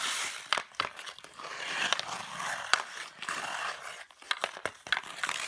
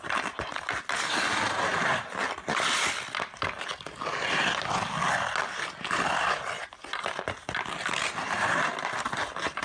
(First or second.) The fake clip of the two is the first